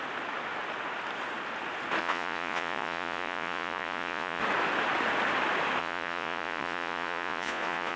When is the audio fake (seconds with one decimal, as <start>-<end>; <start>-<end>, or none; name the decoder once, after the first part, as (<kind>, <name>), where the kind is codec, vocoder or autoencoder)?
2.0-4.4 (vocoder, Vocos); 5.8-8.0

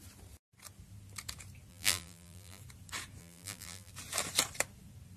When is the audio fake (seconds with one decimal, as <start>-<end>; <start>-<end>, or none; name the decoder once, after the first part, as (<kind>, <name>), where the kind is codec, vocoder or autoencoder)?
1.7-2.6 (vocoder, BigVGAN v2); 3.2-3.9